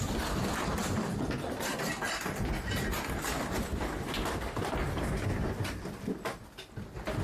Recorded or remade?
recorded